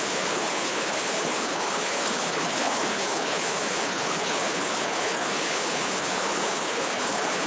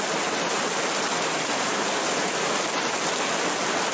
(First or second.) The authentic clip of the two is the second